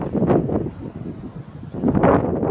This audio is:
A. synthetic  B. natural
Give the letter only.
B